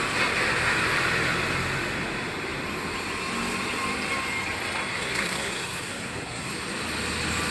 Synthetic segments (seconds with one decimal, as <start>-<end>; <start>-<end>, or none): 4.9-6.5